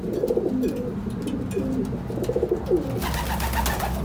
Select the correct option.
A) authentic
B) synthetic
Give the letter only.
A